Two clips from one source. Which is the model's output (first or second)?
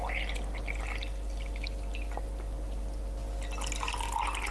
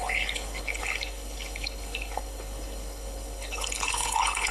second